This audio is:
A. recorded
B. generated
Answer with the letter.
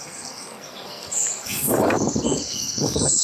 B